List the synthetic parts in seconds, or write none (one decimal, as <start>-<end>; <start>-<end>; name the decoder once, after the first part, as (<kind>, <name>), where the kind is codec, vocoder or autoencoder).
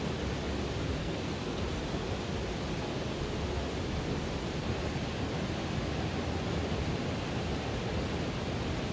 1.0-1.6 (codec, SNAC)